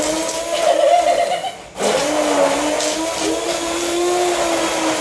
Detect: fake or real real